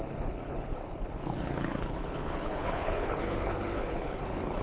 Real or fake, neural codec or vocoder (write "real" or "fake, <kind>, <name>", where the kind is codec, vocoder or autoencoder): fake, codec, HILCodec